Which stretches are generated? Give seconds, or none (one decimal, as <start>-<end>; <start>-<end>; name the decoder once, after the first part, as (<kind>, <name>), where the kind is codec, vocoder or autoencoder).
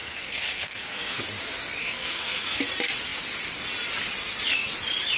0.0-1.2 (codec, SNAC); 1.8-2.6